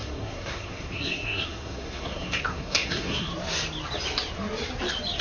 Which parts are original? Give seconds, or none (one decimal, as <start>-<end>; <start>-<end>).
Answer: 3.3-5.2